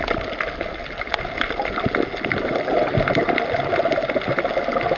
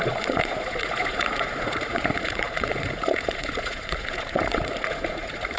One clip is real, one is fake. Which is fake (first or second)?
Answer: second